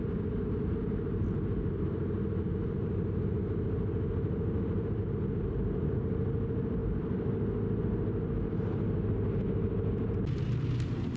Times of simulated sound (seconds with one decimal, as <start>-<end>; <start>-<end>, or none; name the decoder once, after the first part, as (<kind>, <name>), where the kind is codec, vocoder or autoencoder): none